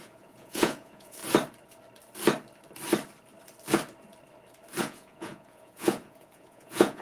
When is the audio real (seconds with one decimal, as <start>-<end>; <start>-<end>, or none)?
1.2-4.8

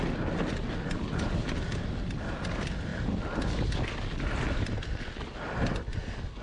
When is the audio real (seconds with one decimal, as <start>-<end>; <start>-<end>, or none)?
0.0-6.4

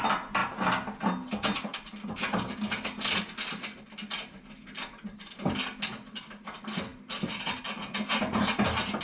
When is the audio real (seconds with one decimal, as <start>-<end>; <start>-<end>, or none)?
0.0-9.0